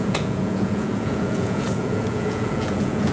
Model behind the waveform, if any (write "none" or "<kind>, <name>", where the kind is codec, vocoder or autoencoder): vocoder, Vocos